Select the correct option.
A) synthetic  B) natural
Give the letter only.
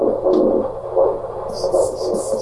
B